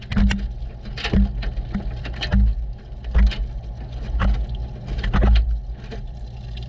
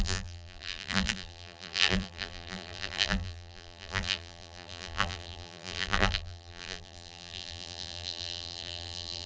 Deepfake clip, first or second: second